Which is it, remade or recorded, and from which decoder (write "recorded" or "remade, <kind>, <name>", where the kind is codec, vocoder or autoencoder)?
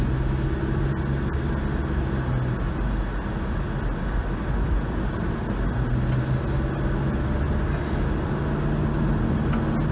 recorded